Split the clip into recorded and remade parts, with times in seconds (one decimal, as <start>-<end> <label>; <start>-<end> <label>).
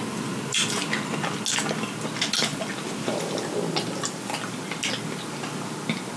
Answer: 0.0-6.2 recorded